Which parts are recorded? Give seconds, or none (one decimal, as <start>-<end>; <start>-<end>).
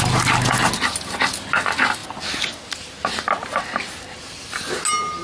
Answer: 0.0-5.2